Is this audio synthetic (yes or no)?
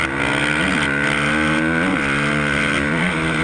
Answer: no